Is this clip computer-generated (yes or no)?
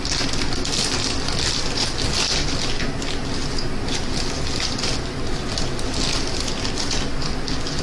no